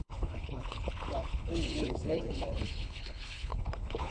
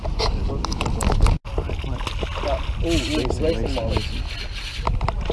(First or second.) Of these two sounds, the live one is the second